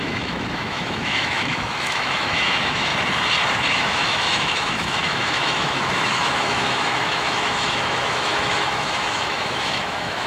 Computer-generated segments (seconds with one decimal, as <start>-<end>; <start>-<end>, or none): 0.0-2.9; 3.7-10.3